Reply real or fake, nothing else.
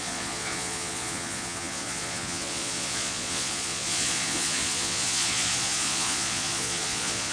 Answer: fake